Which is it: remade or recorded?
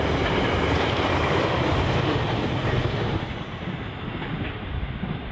recorded